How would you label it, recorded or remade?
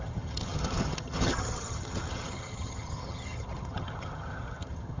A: remade